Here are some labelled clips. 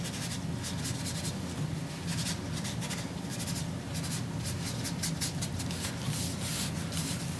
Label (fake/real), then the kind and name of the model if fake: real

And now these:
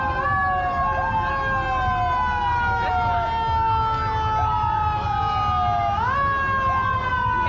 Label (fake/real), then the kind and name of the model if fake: real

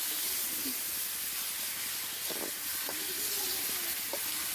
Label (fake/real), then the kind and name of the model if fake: real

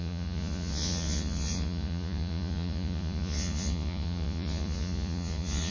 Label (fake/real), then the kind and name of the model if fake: fake, vocoder, Vocos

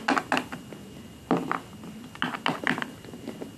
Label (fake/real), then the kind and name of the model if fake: real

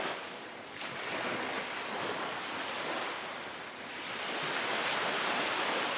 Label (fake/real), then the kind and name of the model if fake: real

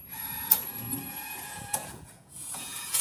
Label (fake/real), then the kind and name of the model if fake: fake, vocoder, Vocos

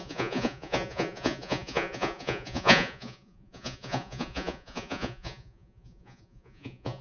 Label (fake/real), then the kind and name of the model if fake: fake, vocoder, Vocos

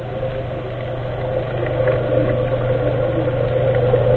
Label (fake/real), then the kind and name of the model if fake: real